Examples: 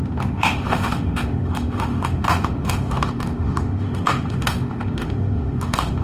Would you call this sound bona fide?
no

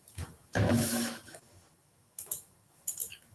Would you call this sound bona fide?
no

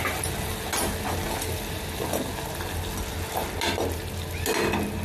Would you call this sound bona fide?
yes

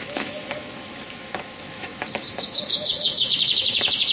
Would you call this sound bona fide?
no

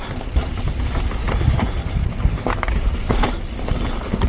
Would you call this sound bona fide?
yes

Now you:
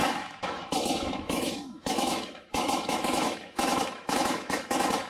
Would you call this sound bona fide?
no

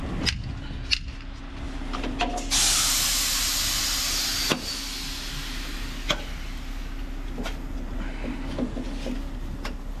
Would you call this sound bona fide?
yes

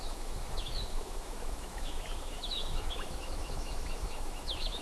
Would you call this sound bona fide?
no